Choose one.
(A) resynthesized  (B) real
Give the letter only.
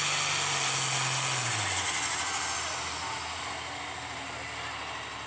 B